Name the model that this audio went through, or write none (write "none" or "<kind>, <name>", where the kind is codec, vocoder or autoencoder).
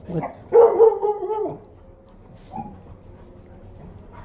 none